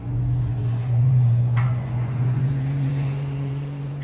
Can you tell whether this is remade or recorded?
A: remade